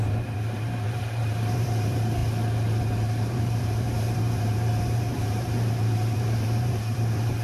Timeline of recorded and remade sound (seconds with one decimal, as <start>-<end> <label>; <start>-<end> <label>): 0.0-2.2 remade; 2.2-2.8 recorded; 2.8-7.4 remade